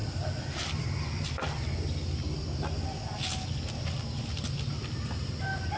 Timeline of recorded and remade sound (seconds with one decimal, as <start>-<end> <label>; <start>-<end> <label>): 0.0-0.8 remade; 0.8-5.8 recorded